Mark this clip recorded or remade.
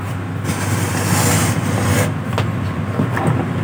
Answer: recorded